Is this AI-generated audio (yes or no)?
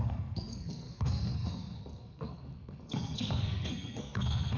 yes